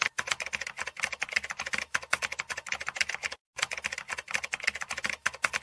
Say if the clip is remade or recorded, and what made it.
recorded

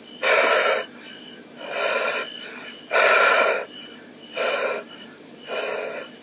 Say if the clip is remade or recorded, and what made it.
recorded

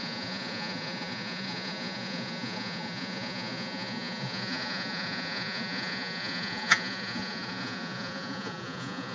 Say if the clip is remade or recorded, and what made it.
remade, vocoder, Vocos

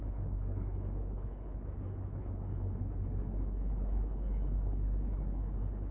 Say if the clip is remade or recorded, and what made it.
remade, codec, HILCodec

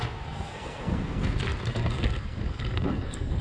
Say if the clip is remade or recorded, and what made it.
remade, codec, SNAC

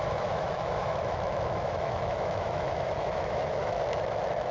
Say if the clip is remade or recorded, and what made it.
remade, autoencoder, DAC-VAE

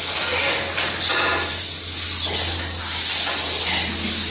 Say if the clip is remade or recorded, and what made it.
recorded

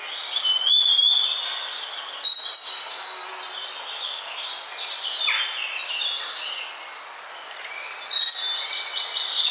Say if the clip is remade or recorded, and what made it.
recorded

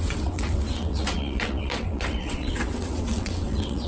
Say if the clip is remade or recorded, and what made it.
remade, vocoder, WaveNeXt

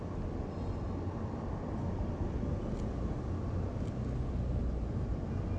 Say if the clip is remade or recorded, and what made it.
recorded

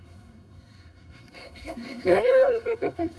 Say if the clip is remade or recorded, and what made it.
remade, codec, SNAC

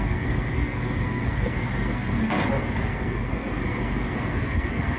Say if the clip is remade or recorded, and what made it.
remade, codec, SNAC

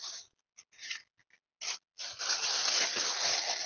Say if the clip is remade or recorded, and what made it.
recorded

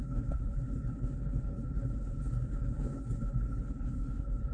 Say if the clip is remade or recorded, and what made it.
remade, codec, HILCodec